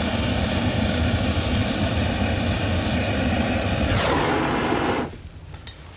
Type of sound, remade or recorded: recorded